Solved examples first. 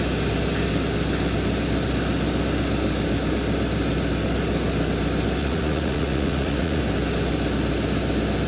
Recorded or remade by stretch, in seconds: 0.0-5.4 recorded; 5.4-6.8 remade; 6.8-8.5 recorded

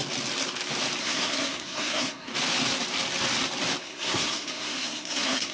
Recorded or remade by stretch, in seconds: 0.0-1.0 recorded; 1.0-2.3 remade; 2.3-3.8 recorded; 3.8-5.5 remade

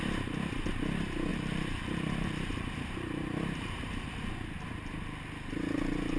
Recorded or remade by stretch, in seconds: 0.0-1.3 recorded; 1.3-4.2 remade; 4.2-6.2 recorded

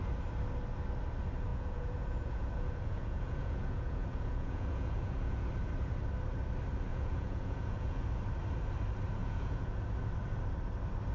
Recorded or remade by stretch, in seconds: 0.0-1.5 recorded; 1.5-5.5 remade; 5.5-6.9 recorded; 6.9-8.0 remade; 8.0-9.2 recorded; 9.2-9.8 remade; 9.8-11.1 recorded

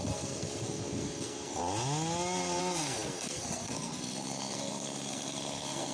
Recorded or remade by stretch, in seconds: 0.0-1.6 remade; 1.6-2.6 recorded; 2.6-5.9 remade

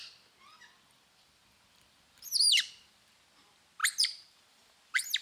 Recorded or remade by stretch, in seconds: 0.0-3.1 remade; 3.1-3.8 recorded; 3.8-4.7 remade; 4.7-5.2 recorded

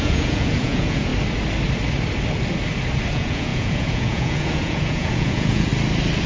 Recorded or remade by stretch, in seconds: 0.0-1.1 remade; 1.1-3.1 recorded; 3.1-5.7 remade; 5.7-6.3 recorded

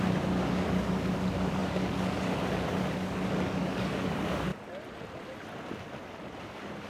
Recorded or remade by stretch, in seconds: 0.0-4.5 remade; 4.5-6.4 recorded; 6.4-6.9 remade